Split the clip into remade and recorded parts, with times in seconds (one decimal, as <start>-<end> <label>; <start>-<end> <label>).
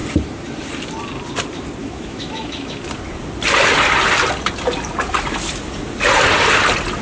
0.0-1.8 recorded; 1.8-2.8 remade; 2.8-7.0 recorded